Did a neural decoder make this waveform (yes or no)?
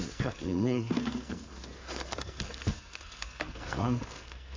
yes